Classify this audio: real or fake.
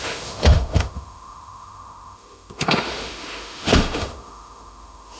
fake